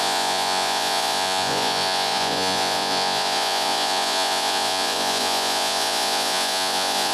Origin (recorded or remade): remade